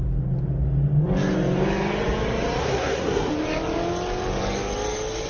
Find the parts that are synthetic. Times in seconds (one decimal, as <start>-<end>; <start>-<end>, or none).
2.6-3.3